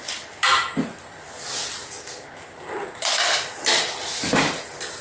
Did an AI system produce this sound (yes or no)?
no